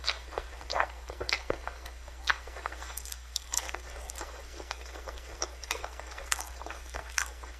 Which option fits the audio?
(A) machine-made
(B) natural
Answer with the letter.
A